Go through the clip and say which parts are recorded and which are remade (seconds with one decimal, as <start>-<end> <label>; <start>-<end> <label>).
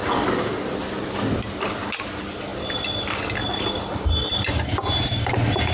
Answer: 0.0-5.7 recorded